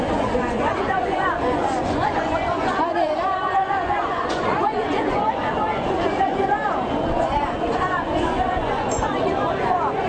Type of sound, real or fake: fake